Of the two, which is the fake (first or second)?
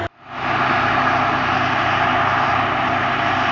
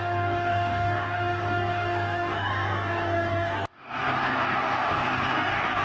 second